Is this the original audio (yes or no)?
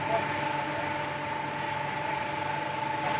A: yes